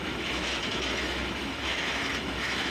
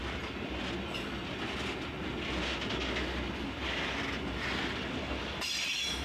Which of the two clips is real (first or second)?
second